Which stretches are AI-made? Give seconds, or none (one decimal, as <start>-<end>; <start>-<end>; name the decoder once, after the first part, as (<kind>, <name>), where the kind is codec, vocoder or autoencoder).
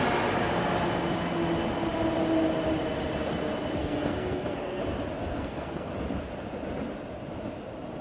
3.8-4.8 (codec, SNAC); 5.3-5.9